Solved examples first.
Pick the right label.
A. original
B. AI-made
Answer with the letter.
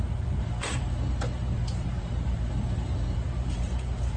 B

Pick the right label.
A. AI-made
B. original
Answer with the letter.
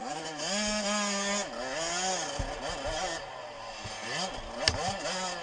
B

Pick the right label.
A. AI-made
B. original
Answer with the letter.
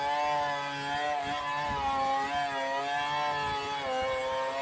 B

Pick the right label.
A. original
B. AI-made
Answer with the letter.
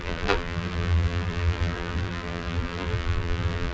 B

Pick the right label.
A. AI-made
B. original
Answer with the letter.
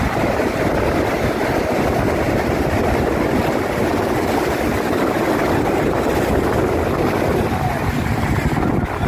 B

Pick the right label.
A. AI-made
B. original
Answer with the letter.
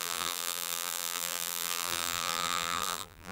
A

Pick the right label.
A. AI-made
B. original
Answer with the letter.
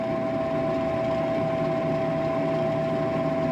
B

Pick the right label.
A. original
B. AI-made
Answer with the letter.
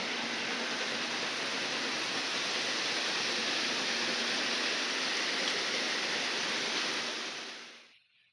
A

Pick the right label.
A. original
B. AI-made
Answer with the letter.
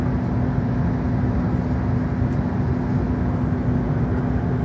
A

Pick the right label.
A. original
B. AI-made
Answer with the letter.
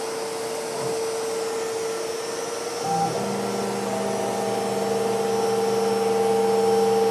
A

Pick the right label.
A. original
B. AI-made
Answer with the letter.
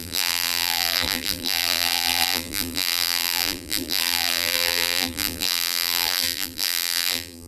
B